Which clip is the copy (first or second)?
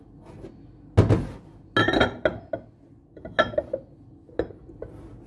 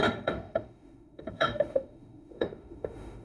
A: second